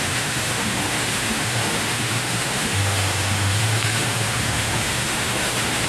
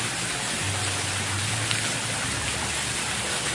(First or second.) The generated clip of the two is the first